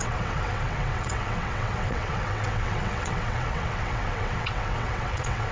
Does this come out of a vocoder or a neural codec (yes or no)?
yes